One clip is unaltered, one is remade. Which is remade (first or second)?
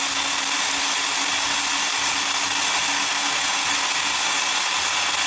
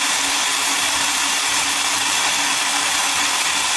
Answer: second